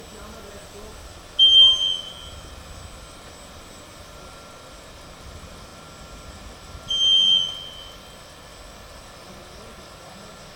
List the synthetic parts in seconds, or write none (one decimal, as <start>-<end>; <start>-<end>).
none

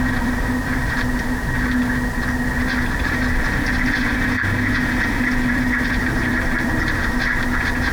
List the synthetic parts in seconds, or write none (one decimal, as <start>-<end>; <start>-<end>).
0.0-0.8; 5.5-7.0

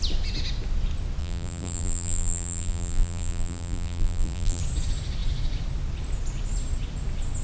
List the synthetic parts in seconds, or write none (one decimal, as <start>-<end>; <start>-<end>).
1.2-4.6